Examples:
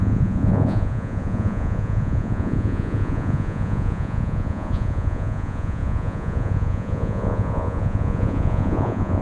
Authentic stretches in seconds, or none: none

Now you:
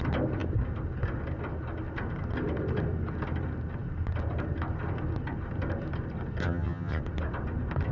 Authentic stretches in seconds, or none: 0.0-6.4; 7.0-7.9

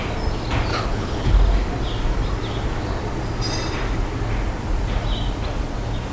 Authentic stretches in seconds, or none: 0.0-0.7; 1.3-6.1

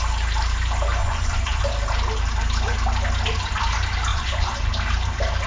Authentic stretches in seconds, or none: 0.0-1.0; 1.6-4.1; 4.7-5.5

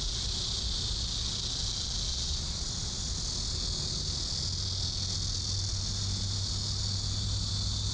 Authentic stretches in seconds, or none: 0.0-2.1; 2.7-7.9

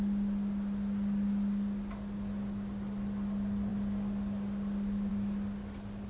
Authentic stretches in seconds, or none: 0.0-6.1

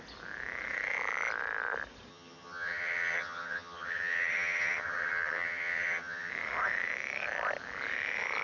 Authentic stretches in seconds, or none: 0.0-2.1; 6.3-8.4